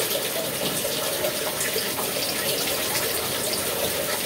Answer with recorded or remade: recorded